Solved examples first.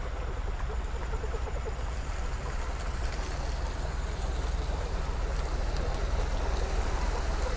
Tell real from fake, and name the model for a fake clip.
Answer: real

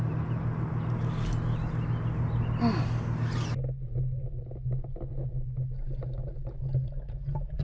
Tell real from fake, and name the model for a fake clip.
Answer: real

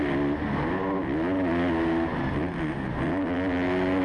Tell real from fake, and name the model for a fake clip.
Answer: real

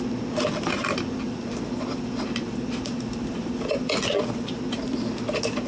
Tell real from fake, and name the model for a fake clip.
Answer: real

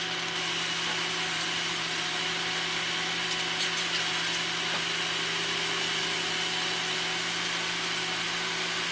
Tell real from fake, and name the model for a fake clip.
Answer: real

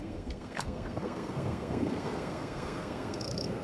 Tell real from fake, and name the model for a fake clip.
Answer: fake, codec, SNAC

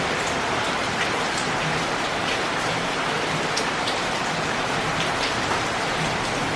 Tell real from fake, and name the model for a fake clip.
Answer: fake, vocoder, BigVGAN v2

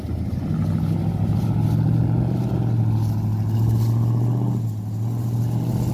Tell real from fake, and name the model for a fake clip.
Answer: real